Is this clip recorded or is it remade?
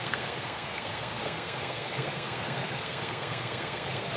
remade